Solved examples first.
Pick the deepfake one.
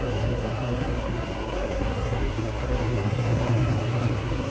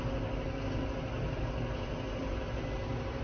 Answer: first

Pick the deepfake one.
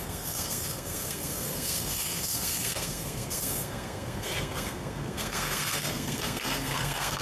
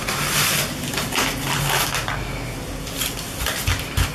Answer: first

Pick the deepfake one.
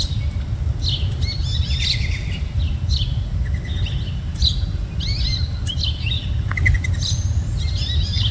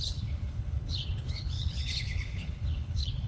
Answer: second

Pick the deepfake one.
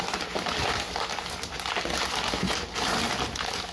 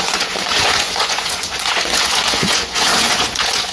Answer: second